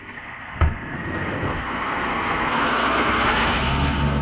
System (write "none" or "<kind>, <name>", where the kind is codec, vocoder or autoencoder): codec, SNAC